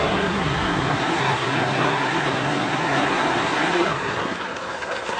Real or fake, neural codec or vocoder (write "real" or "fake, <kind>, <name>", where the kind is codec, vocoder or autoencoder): fake, codec, SNAC